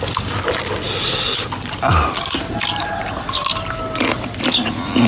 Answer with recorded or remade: recorded